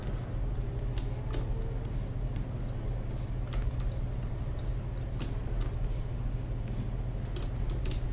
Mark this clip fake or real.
real